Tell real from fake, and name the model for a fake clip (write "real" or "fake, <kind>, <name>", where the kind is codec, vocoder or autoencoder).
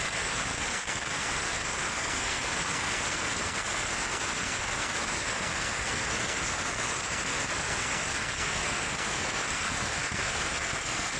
fake, codec, SNAC